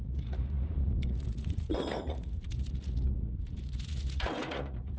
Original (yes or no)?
no